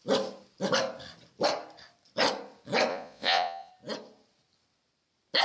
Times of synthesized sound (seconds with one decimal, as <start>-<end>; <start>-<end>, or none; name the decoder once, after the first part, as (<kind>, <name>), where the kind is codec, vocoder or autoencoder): 2.9-3.7 (vocoder, Vocos)